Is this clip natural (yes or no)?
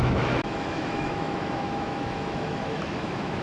no